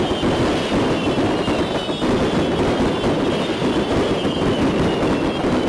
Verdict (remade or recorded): recorded